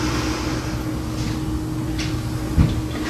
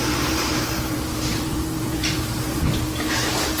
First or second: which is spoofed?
second